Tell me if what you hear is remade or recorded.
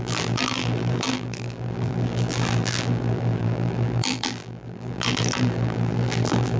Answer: remade